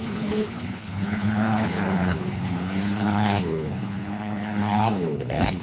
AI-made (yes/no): yes